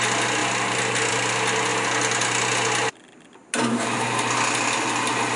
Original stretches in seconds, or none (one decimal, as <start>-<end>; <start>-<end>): 0.0-5.4